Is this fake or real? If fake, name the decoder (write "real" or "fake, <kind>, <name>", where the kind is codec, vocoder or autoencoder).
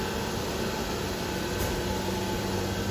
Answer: fake, vocoder, BigVGAN v2